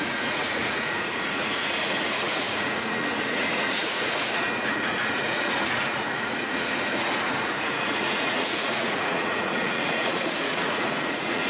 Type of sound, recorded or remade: remade